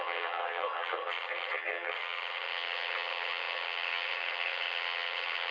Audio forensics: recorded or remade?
remade